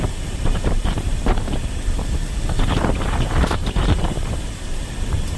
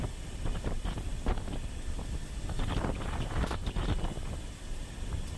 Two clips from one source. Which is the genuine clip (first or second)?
second